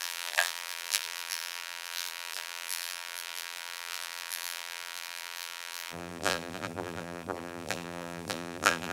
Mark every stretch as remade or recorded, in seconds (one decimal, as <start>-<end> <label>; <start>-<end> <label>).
0.0-8.9 remade